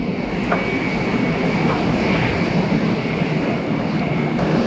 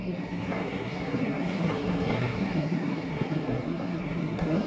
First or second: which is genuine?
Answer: first